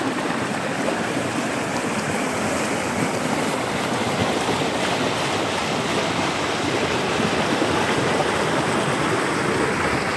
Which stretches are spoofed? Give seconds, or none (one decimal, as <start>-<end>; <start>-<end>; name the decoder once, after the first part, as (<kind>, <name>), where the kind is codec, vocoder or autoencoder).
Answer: 0.0-10.2 (vocoder, BigVGAN v2)

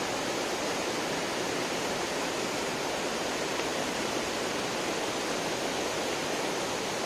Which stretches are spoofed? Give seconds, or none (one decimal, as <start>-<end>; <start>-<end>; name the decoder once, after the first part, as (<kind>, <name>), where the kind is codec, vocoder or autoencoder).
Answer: none

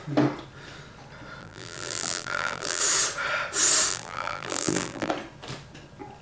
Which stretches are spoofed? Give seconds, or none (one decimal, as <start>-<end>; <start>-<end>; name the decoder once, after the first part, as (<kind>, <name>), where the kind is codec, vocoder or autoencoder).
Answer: 1.4-2.8 (vocoder, BigVGAN v2); 3.9-5.1

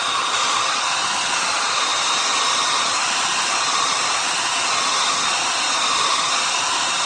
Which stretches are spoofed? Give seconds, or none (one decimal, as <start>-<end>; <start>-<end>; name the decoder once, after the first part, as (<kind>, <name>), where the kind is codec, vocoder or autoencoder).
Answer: none